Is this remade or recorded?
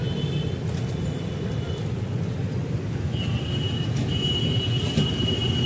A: recorded